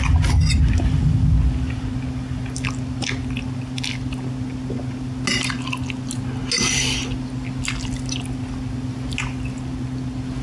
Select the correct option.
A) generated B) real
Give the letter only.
B